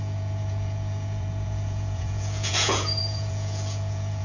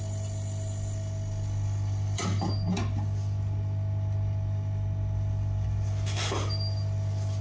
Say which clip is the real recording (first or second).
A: second